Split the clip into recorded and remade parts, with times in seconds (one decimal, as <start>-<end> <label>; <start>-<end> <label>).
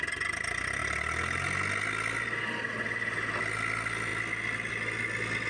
0.0-5.5 recorded